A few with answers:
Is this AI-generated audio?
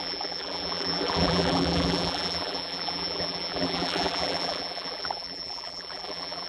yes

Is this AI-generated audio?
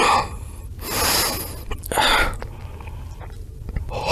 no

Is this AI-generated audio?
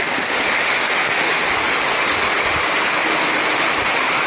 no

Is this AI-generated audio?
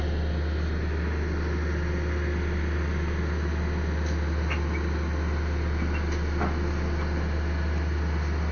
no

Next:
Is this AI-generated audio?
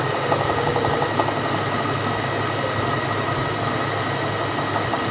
no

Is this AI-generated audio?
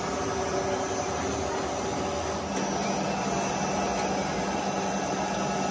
no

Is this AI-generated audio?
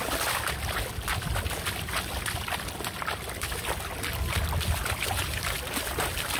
no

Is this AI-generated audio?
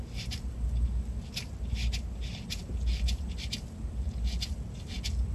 no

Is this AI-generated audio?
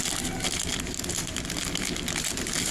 no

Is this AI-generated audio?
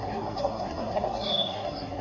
yes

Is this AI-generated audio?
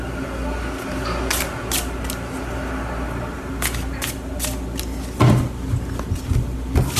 no